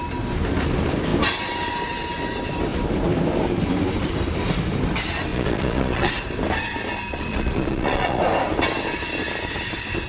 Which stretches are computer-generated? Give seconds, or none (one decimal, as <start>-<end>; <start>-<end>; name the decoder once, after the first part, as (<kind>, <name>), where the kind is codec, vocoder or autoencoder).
5.3-6.1 (vocoder, Vocos); 7.1-8.2